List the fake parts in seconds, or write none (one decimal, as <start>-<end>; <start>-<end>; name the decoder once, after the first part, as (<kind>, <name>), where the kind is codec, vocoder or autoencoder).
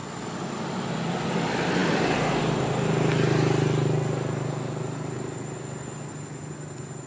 none